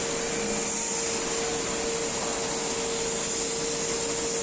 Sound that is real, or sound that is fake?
real